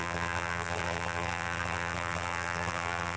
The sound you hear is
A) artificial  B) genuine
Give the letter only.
A